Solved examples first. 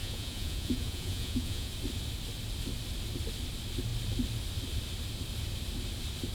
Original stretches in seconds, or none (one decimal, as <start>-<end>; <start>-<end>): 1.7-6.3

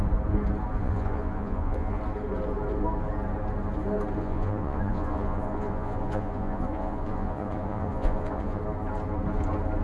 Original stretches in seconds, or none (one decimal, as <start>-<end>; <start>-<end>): 0.0-0.8; 2.0-4.2; 8.6-9.8

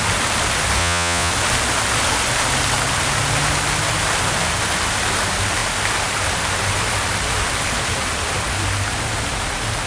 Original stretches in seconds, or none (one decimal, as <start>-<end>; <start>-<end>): 0.0-0.8; 1.3-9.9

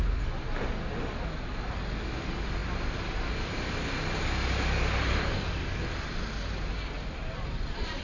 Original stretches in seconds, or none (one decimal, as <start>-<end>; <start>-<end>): 0.0-8.0

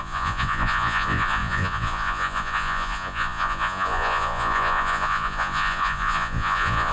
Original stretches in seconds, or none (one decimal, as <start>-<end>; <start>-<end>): none

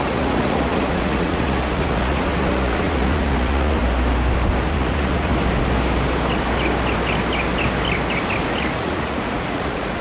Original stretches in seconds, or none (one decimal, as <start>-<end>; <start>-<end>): 3.8-4.7; 5.3-8.5

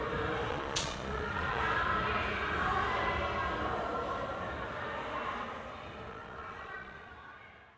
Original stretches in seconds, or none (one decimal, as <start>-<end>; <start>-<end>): 0.0-0.5; 1.6-6.1; 7.1-7.8